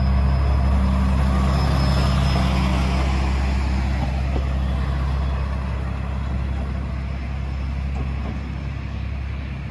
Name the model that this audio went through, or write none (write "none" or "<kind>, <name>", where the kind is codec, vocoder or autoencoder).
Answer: none